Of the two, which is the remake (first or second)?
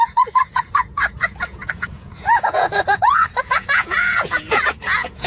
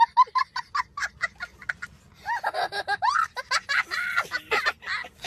first